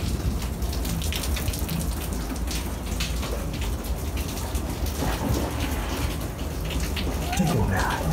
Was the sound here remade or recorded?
recorded